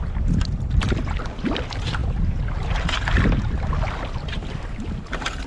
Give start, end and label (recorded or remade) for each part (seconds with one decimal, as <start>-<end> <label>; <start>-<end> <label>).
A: 0.0-5.5 recorded